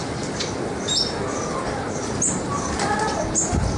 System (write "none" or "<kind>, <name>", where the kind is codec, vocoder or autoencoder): none